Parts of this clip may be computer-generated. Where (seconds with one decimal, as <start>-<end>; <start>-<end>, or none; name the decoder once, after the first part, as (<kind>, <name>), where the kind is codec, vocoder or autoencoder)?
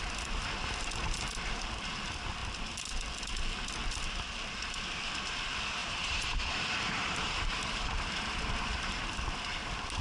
5.8-9.2 (vocoder, BigVGAN v2)